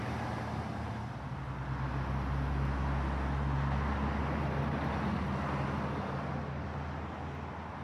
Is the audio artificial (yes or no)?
no